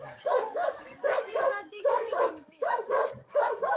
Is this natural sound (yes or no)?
no